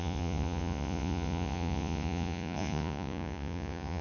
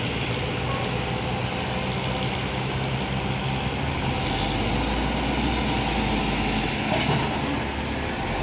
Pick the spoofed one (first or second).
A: first